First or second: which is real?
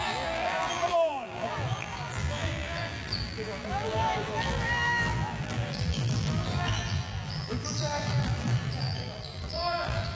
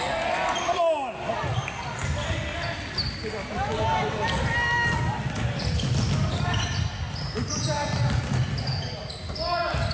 second